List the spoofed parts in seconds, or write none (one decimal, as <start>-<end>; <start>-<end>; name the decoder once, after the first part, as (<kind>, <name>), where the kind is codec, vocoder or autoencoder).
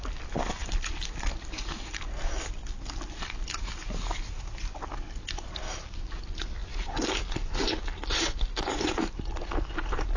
none